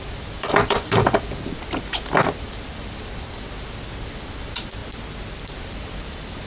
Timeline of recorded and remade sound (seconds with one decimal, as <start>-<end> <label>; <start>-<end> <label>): 0.0-4.8 remade; 4.8-5.6 recorded; 5.6-6.5 remade